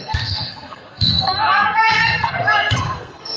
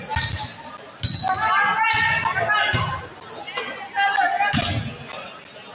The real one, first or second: second